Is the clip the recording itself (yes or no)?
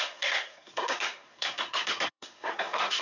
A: no